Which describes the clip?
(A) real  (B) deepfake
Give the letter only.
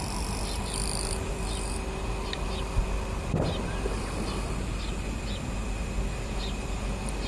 A